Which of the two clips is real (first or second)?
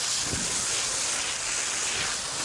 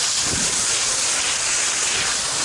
first